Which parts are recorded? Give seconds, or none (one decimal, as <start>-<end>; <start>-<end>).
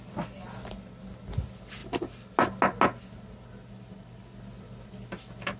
0.0-5.6